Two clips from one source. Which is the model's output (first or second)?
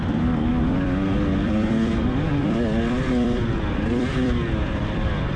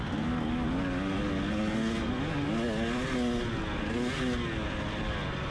first